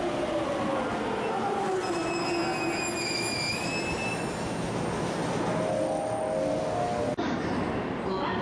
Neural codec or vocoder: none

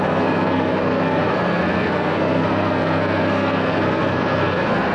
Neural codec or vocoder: codec, SNAC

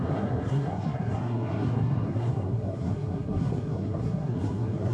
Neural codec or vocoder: codec, SNAC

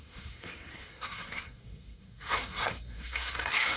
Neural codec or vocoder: codec, SNAC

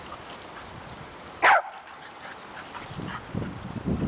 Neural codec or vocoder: none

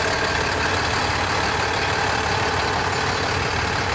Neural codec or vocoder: none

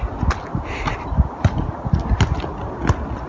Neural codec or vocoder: none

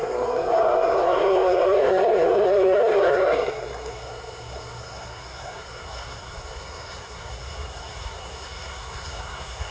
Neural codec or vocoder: codec, SNAC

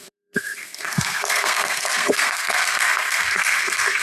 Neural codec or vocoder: codec, SNAC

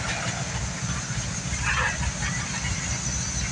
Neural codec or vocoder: none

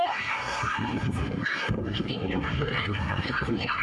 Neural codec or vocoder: codec, SNAC